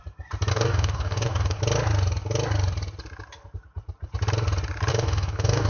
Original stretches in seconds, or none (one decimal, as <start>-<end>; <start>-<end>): 0.0-0.5; 1.6-4.9